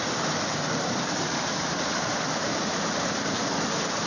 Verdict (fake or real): real